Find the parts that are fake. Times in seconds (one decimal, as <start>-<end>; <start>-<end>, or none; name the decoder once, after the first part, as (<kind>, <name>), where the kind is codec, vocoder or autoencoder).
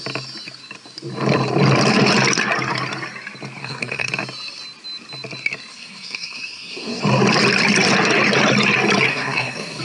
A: 3.6-4.1 (codec, SNAC); 5.7-7.0; 9.1-9.8